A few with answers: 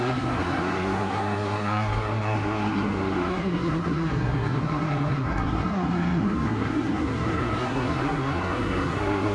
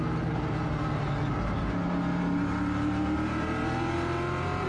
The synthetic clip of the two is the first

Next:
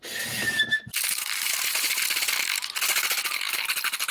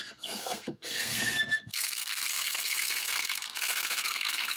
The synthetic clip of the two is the second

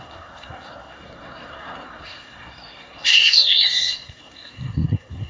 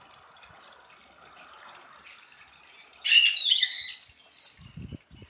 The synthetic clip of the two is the first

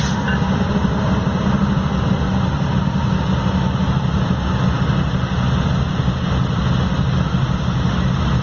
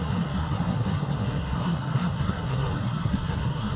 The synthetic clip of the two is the second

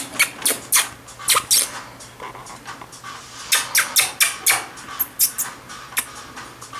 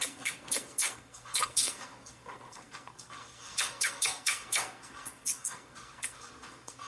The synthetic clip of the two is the second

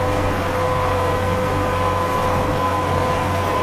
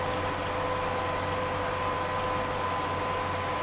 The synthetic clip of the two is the first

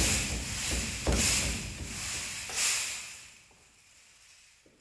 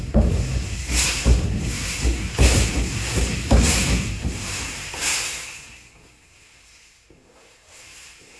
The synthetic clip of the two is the second